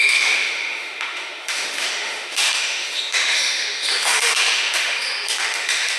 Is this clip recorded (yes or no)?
no